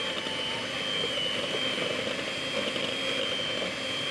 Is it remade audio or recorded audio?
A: recorded